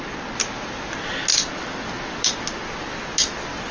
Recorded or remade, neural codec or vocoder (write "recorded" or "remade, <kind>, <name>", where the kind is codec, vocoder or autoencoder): recorded